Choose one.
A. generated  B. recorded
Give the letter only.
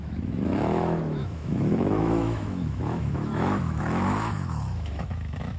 A